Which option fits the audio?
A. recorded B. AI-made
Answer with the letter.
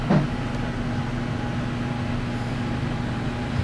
A